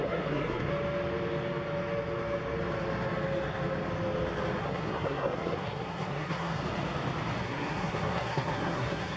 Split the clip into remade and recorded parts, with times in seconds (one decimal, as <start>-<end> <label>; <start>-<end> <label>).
0.0-0.7 remade; 0.7-4.6 recorded; 4.6-6.6 remade; 6.6-7.4 recorded; 7.4-9.2 remade